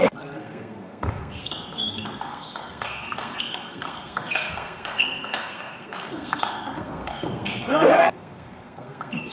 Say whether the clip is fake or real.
fake